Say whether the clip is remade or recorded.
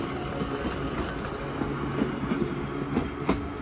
recorded